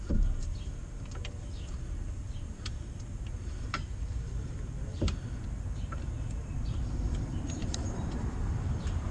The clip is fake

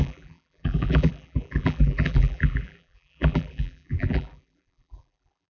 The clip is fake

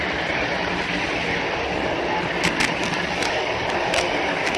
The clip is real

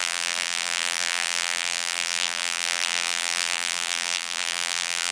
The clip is fake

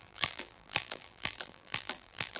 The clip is fake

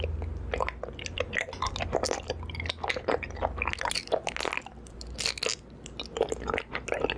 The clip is real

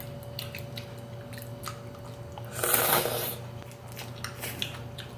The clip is real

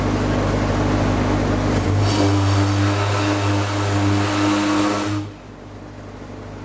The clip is real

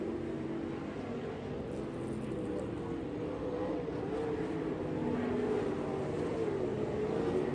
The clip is real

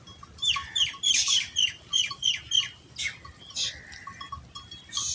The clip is real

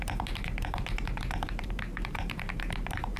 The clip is fake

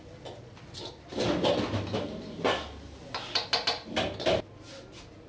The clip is real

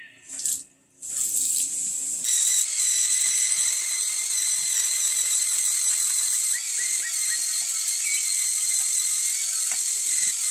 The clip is real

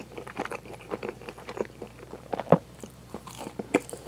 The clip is fake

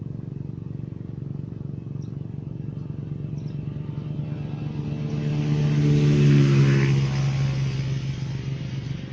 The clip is real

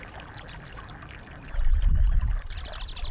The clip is fake